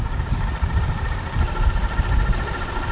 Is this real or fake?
real